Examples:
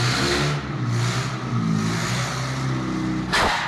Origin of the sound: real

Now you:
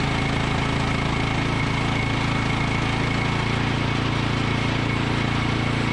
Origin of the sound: real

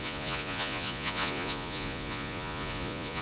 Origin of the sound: fake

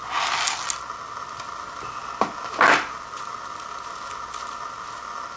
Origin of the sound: real